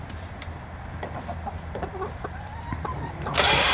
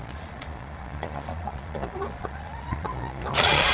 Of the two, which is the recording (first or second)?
first